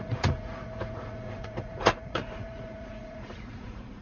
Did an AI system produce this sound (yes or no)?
yes